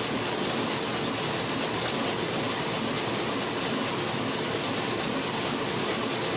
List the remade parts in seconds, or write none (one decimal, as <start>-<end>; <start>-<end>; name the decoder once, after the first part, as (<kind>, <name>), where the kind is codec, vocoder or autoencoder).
none